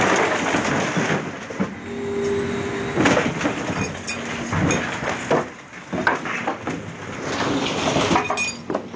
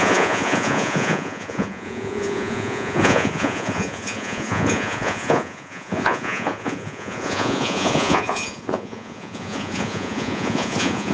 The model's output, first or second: second